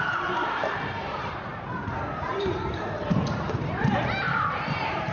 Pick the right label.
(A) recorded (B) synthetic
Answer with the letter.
B